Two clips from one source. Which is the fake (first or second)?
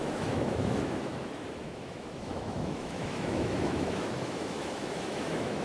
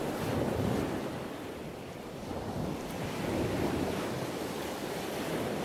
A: first